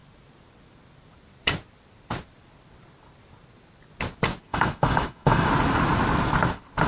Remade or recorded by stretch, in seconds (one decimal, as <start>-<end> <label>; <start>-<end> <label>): 0.0-4.5 recorded; 4.5-5.5 remade; 5.5-6.9 recorded